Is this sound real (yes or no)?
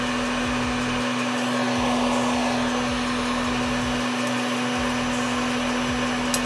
yes